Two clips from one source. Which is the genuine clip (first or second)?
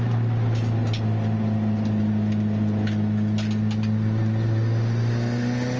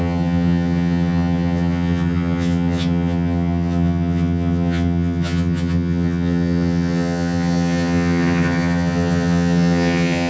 first